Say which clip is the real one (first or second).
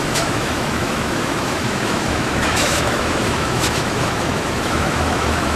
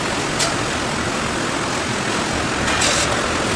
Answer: second